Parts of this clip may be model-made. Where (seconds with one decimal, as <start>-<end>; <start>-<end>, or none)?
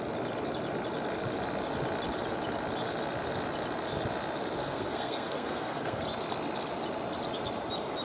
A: 4.6-6.0